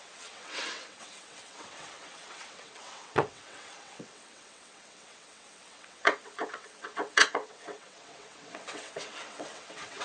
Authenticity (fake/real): fake